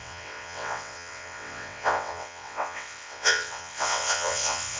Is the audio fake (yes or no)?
yes